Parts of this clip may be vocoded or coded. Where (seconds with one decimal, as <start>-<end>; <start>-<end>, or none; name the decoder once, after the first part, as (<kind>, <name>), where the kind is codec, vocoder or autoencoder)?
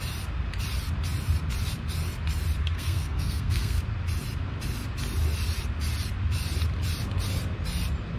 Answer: 2.6-3.8 (codec, SNAC)